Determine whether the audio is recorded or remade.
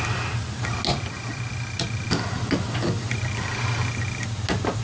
recorded